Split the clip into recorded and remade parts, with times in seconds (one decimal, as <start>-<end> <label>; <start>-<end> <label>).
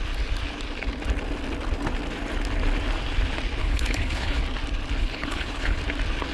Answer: 0.0-3.6 recorded; 3.6-4.4 remade; 4.4-5.0 recorded; 5.0-5.8 remade; 5.8-6.3 recorded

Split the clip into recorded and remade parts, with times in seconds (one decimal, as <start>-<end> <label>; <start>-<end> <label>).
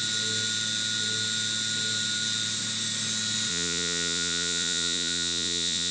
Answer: 0.0-3.5 recorded; 3.5-5.9 remade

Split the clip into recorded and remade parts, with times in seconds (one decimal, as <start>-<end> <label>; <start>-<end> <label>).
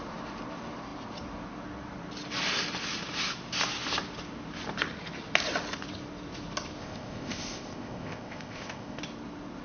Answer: 0.0-6.8 recorded; 6.8-9.0 remade; 9.0-9.6 recorded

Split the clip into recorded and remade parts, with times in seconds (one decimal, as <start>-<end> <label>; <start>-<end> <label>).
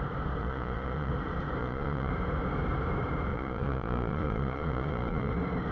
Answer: 0.0-0.4 recorded; 0.4-1.1 remade; 1.1-1.6 recorded; 1.6-2.1 remade; 2.1-3.3 recorded; 3.3-5.3 remade; 5.3-5.7 recorded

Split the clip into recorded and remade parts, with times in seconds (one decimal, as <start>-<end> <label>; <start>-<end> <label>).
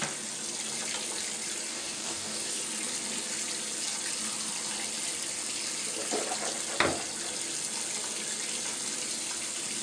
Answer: 0.0-1.7 recorded; 1.7-2.6 remade; 2.6-9.8 recorded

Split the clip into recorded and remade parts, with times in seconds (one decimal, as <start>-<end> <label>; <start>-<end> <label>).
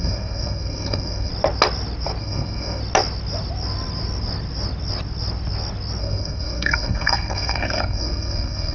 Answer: 0.0-1.3 remade; 1.3-2.2 recorded; 2.2-2.8 remade; 2.8-6.0 recorded; 6.0-8.7 remade